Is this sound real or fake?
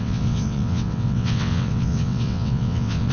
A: fake